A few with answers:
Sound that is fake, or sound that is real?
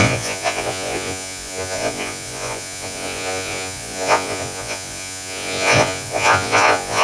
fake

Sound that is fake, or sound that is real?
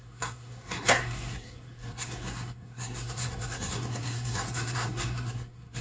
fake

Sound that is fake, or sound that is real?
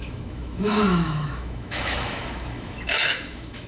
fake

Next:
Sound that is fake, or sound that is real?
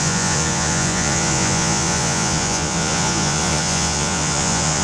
fake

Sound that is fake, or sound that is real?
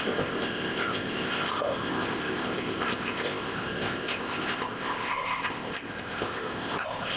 fake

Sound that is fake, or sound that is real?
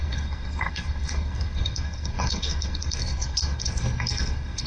fake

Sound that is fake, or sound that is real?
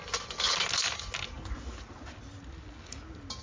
real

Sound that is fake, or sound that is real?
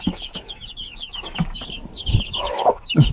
fake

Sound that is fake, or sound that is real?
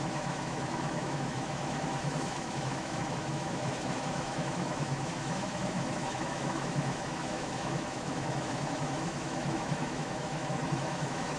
fake